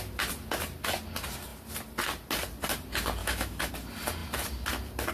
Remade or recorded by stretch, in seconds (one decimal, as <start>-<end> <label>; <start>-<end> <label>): 0.0-3.2 recorded; 3.2-3.7 remade; 3.7-5.1 recorded